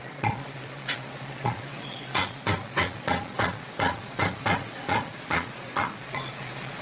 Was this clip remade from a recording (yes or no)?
yes